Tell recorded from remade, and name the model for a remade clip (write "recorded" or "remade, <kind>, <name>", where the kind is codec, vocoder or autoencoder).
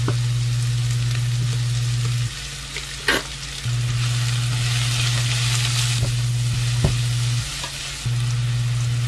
recorded